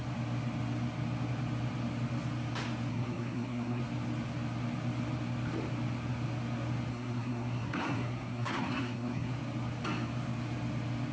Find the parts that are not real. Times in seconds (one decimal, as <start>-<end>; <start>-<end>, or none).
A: 2.9-3.8; 6.9-9.3